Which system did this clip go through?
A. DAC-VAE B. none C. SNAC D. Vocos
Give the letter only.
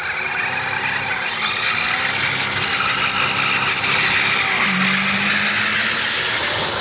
B